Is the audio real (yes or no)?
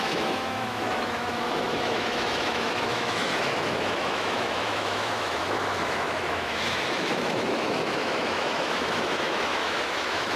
no